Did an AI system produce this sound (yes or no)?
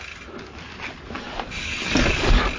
no